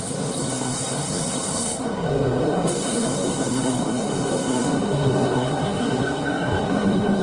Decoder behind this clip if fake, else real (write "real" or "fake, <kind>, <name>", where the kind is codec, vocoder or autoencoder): fake, codec, SNAC